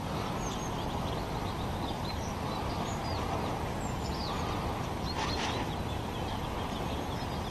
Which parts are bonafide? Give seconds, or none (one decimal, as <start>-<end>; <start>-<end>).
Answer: 0.0-7.5